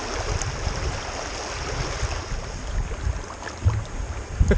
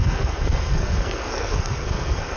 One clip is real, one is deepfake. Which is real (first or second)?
first